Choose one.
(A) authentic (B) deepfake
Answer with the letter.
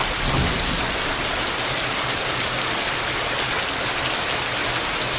A